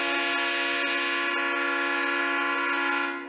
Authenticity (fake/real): real